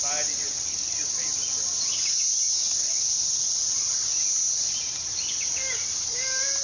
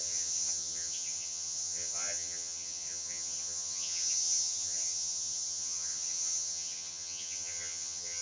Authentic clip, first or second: first